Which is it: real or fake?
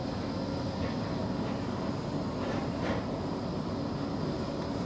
real